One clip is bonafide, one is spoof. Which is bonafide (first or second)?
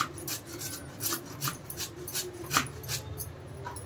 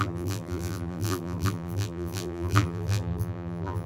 first